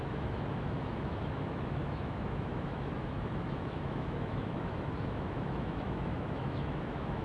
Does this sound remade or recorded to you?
remade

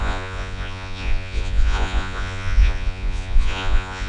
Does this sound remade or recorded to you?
remade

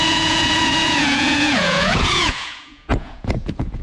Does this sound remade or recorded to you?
remade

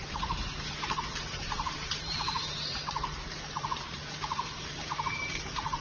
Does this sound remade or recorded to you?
remade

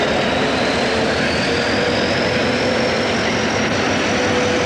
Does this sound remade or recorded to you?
recorded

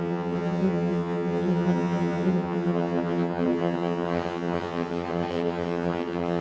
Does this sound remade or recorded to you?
remade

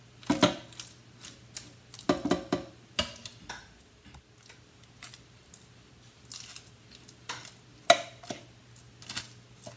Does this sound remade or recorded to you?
recorded